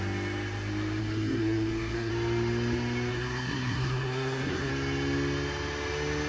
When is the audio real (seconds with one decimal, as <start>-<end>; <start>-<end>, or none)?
0.0-1.0; 2.1-3.1; 4.7-6.3